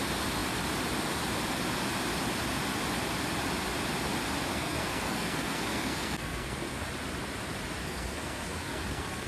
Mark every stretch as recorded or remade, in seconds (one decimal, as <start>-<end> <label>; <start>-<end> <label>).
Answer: 0.0-4.5 recorded; 4.5-6.9 remade; 6.9-7.8 recorded; 7.8-9.3 remade